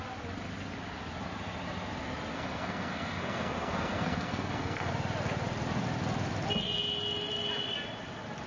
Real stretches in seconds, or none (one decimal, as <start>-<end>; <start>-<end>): 0.0-2.3; 4.9-8.5